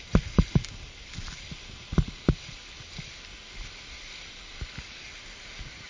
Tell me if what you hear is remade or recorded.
recorded